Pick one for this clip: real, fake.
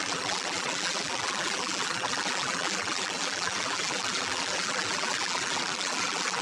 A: fake